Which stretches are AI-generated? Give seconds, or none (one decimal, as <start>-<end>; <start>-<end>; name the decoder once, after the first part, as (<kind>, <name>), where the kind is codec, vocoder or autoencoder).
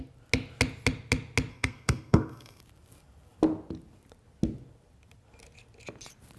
1.5-2.6 (codec, SNAC)